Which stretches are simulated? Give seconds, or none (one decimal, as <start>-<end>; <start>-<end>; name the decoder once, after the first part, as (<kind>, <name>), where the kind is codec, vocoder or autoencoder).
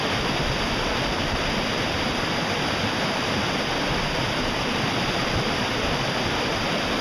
none